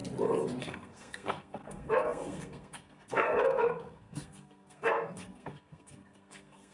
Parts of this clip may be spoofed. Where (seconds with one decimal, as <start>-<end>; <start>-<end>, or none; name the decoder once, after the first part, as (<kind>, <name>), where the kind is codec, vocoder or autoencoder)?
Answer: 0.6-6.7 (codec, SNAC)